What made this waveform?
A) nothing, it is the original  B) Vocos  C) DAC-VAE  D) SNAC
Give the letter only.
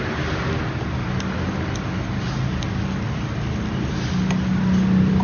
A